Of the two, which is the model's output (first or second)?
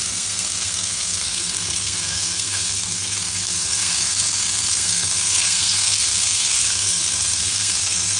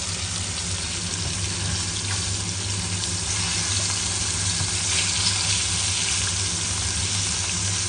first